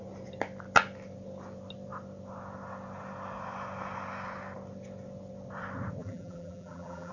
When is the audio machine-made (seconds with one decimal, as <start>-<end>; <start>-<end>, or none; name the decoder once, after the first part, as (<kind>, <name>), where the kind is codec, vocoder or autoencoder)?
6.0-7.1 (vocoder, BigVGAN v2)